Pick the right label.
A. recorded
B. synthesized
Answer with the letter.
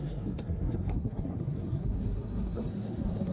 B